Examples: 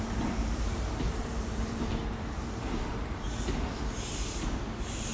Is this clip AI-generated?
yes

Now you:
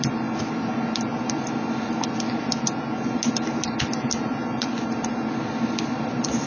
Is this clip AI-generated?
no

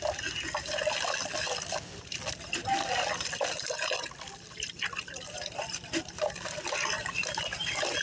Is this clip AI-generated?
yes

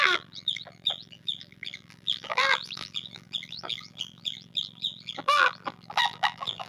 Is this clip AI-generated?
yes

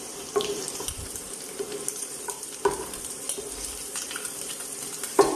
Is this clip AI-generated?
yes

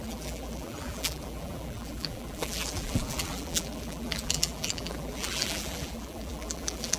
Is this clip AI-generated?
yes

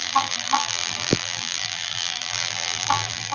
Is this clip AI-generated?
yes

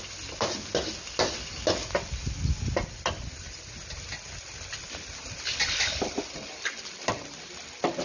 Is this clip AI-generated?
no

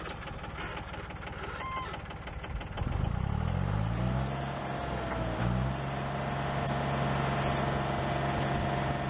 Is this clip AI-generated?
no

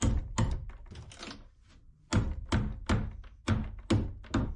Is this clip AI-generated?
no